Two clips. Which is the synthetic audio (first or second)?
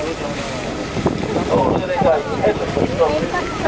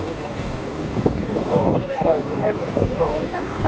second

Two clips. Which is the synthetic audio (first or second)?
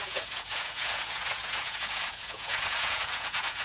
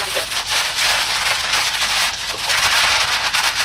first